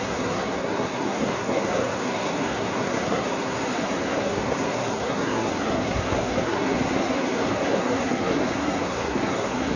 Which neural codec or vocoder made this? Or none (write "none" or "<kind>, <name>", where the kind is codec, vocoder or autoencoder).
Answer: codec, SNAC